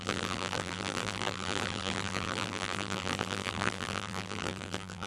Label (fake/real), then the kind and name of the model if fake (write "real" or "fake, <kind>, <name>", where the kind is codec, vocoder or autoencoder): fake, vocoder, BigVGAN v2